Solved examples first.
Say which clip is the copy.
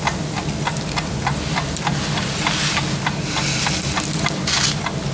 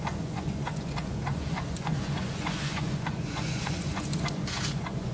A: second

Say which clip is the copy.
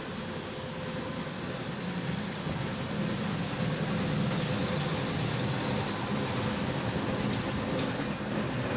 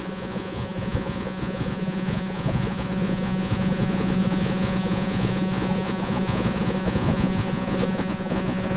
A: second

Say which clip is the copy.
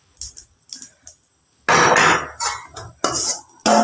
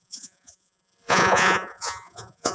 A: second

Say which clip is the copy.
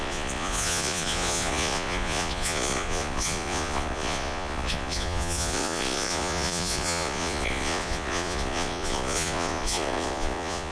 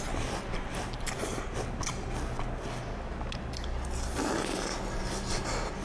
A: first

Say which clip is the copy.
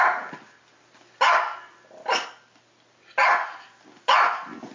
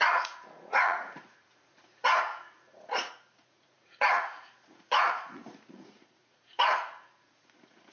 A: second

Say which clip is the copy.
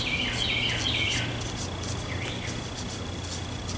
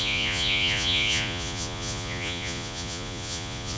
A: second